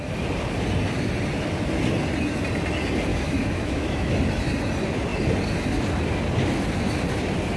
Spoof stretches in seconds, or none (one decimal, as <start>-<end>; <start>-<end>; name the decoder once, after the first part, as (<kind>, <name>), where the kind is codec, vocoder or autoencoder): 3.1-4.1 (autoencoder, DAC-VAE)